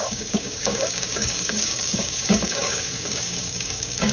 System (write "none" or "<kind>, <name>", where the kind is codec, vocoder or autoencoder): codec, DAC